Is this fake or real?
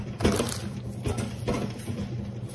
real